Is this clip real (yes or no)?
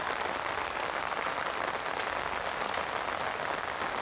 yes